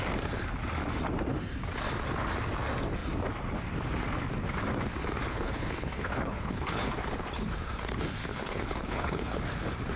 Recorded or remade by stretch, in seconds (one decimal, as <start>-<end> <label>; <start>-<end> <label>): 0.0-5.3 recorded; 5.3-6.9 remade; 6.9-8.2 recorded; 8.2-9.4 remade; 9.4-10.0 recorded